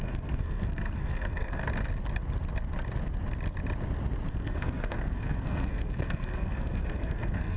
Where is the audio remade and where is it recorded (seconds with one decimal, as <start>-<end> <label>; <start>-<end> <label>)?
0.0-1.6 remade; 1.6-4.3 recorded; 4.3-7.6 remade